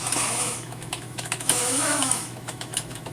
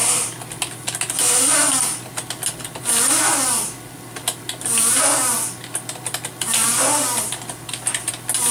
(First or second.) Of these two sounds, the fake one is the first